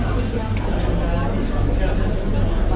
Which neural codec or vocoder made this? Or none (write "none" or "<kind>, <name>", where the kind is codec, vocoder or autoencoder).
none